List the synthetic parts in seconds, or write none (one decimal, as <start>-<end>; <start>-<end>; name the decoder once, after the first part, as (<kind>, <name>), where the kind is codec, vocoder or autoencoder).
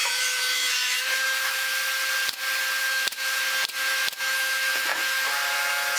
0.0-1.7 (autoencoder, DAC-VAE); 2.8-3.4; 4.2-6.0